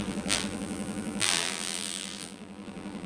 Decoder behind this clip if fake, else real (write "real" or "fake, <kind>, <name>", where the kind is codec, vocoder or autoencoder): fake, vocoder, BigVGAN v2